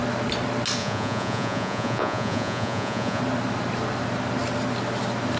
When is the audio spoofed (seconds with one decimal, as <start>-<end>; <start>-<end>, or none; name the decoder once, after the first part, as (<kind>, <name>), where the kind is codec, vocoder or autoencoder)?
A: 0.8-3.2 (vocoder, Vocos)